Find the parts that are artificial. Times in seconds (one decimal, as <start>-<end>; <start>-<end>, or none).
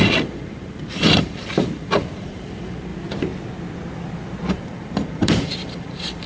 0.0-2.9; 4.5-6.3